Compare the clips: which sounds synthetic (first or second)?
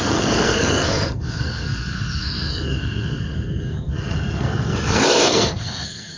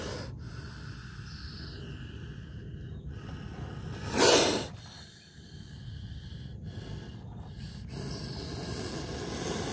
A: first